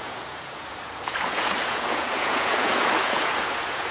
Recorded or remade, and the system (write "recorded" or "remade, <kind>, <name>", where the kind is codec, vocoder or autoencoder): remade, vocoder, Vocos